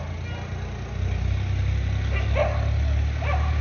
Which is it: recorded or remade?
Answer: recorded